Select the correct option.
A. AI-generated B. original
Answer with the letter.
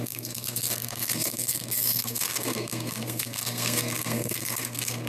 A